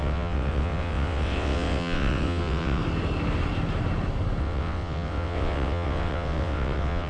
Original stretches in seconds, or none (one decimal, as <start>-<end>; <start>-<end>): 2.8-4.4